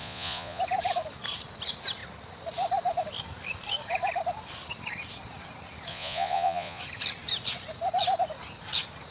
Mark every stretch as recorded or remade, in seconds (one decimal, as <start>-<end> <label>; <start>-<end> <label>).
0.0-0.6 remade; 0.6-5.9 recorded; 5.9-6.8 remade; 6.8-9.1 recorded